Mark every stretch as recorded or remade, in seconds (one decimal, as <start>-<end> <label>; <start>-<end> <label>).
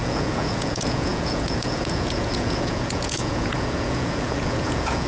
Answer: 0.0-5.1 remade